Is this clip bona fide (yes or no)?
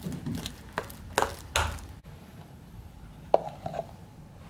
yes